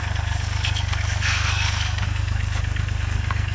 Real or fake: fake